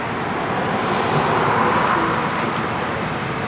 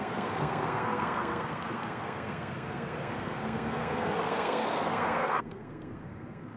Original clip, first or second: first